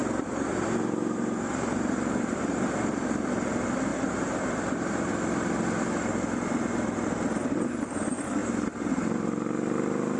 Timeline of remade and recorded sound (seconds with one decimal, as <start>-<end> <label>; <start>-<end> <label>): 0.0-2.4 remade; 2.4-3.9 recorded; 3.9-5.1 remade; 5.1-8.4 recorded; 8.4-8.9 remade; 8.9-10.2 recorded